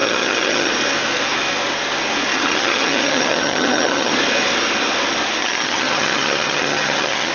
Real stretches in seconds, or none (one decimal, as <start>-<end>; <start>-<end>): 0.7-2.3; 4.1-5.4